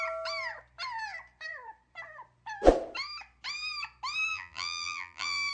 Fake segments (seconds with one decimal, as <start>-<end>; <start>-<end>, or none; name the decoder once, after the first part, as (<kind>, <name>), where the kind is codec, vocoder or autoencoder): 4.3-5.5 (vocoder, BigVGAN v2)